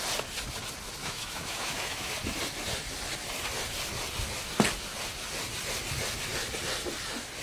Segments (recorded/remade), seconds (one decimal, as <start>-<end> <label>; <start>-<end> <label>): 0.0-1.0 recorded; 1.0-2.1 remade; 2.1-7.4 recorded